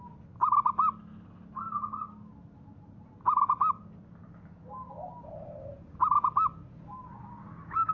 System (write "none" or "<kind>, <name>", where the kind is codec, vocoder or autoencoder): none